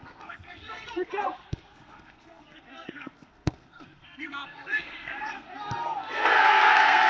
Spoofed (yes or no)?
yes